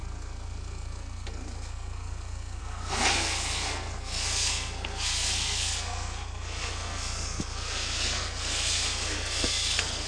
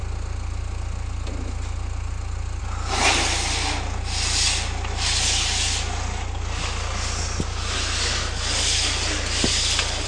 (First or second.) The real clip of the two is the second